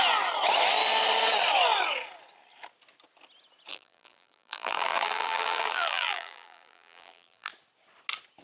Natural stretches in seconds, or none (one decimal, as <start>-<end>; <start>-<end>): 0.0-3.7; 7.5-8.4